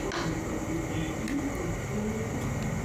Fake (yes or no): no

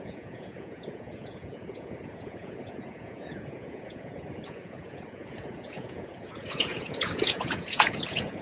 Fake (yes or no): yes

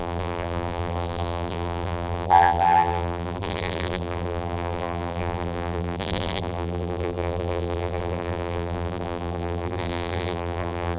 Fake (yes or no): yes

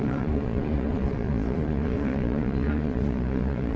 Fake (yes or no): yes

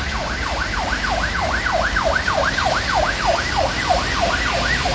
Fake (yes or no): no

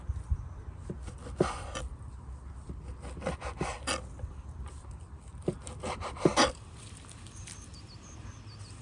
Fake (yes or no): no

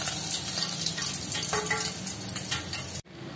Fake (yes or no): no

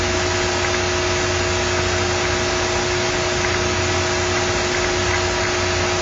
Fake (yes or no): no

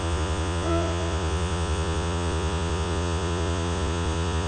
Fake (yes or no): yes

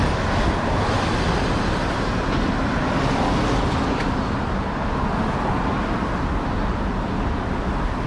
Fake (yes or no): no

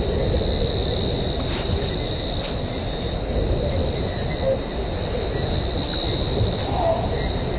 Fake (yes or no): no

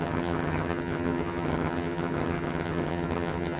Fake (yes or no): yes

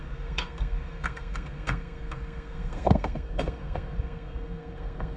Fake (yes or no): yes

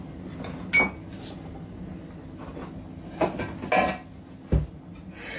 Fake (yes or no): no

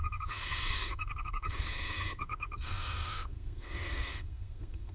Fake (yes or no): yes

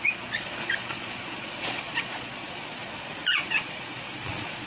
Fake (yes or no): yes